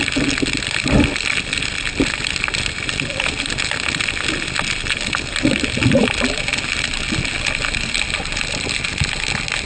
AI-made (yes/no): no